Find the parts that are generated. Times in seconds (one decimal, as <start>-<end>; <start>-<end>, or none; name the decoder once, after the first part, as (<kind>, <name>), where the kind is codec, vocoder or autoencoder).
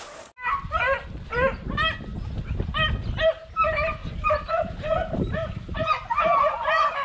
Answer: 4.0-4.8 (vocoder, BigVGAN v2)